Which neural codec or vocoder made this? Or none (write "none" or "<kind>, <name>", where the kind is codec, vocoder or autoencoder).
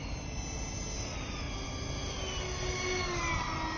none